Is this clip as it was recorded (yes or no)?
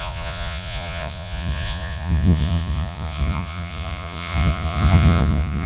no